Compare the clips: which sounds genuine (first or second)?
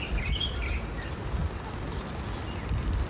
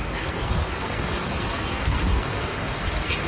first